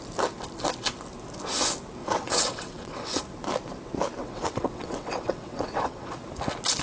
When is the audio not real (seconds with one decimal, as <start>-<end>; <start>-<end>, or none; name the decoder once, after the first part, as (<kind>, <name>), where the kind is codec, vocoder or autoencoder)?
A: 2.0-3.2 (vocoder, WaveNeXt); 4.2-6.1